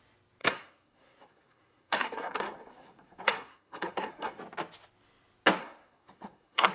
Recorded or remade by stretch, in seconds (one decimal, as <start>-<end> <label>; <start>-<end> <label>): 0.0-0.4 recorded; 0.4-4.4 remade; 4.4-5.6 recorded; 5.6-6.7 remade

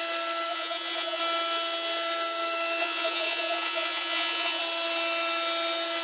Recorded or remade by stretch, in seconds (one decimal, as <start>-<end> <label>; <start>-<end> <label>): 0.0-0.5 recorded; 0.5-1.2 remade; 1.2-2.8 recorded; 2.8-4.6 remade; 4.6-6.0 recorded